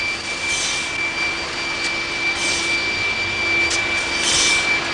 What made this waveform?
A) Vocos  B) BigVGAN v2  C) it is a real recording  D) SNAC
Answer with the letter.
C